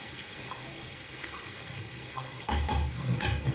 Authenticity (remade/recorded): remade